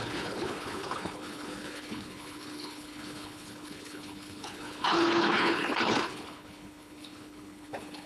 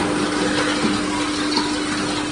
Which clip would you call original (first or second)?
second